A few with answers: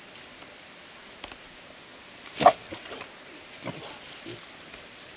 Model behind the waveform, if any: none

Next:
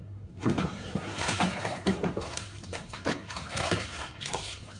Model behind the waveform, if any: codec, SNAC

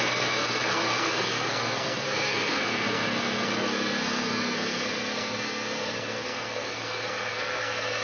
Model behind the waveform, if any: codec, SNAC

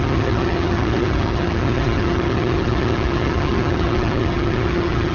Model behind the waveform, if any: vocoder, HiFi-GAN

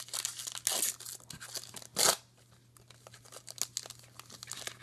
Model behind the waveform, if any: none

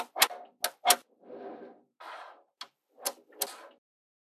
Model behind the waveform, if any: none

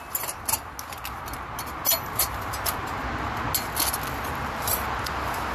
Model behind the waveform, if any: none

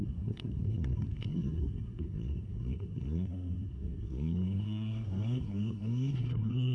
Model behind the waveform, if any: codec, SNAC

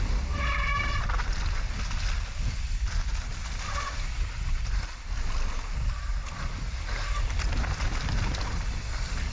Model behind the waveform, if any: none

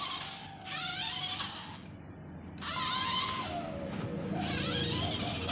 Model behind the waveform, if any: none